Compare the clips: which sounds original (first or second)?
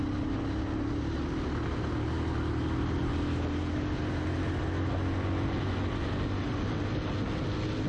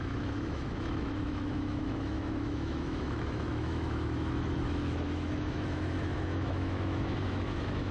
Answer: first